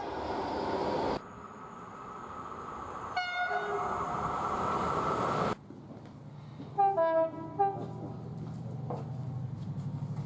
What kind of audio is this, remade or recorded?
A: recorded